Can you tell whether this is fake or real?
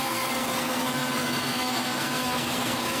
fake